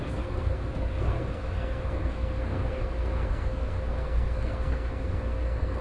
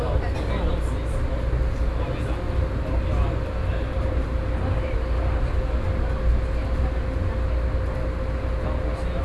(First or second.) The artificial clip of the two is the first